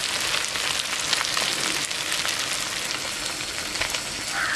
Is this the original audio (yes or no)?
yes